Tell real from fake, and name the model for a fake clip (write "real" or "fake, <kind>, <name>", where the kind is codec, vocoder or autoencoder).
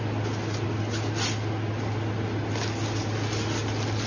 real